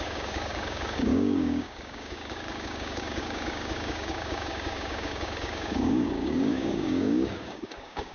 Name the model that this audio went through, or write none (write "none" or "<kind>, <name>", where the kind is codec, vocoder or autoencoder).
codec, DAC